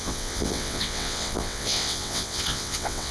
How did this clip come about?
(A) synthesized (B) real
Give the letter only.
A